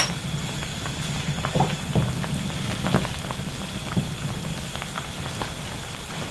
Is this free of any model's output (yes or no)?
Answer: yes